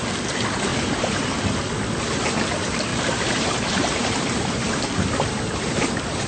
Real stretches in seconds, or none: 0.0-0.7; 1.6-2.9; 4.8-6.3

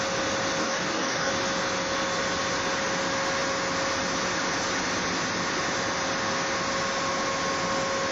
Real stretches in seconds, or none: 0.0-0.6; 1.3-8.1

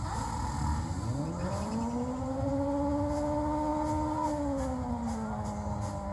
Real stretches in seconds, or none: 0.0-1.1; 2.5-6.1

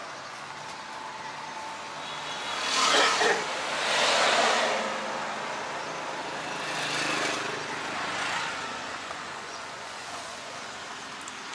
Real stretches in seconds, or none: 0.5-8.1; 10.7-11.5